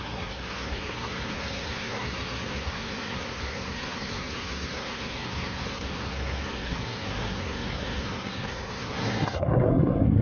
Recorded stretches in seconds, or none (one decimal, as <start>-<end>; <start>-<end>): none

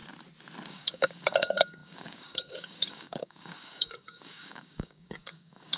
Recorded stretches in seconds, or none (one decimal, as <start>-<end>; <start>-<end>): 0.0-0.7

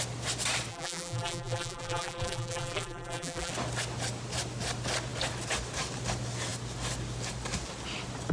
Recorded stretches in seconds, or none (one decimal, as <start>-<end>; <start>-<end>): 0.0-0.7; 3.5-8.3